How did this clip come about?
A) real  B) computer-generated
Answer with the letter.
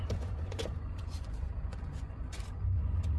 B